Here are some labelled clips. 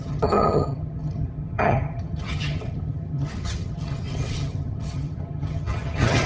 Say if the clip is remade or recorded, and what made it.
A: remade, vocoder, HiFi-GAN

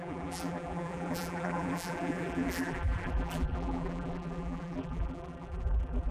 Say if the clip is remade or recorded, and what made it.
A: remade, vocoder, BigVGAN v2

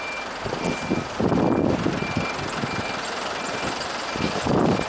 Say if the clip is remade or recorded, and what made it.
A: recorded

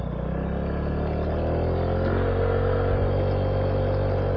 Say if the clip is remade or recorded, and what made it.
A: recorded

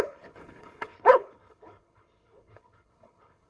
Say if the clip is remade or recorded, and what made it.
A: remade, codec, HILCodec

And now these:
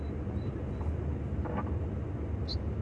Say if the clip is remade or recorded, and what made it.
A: recorded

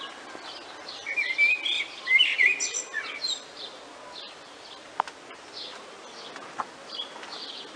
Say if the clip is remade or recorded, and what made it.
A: recorded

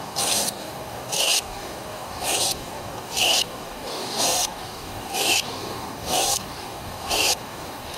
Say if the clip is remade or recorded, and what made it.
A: remade, codec, DAC